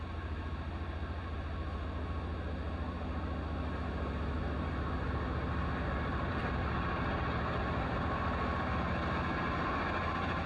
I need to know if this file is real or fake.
real